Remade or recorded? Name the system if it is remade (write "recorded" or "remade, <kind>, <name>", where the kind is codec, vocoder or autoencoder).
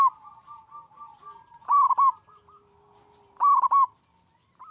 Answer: recorded